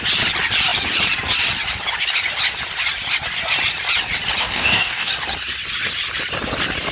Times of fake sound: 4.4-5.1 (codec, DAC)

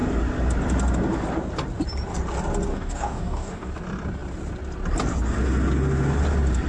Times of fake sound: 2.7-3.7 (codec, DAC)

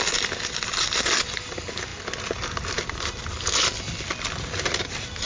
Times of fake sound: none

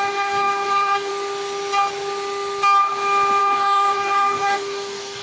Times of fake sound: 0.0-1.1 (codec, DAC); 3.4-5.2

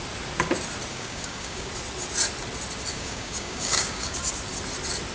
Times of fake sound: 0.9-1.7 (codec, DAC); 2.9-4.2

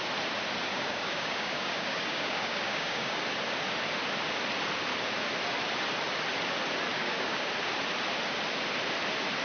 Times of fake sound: 0.7-3.2 (codec, DAC); 6.9-7.5

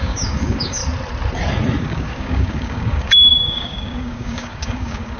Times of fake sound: 0.0-0.8 (codec, DAC); 1.8-5.2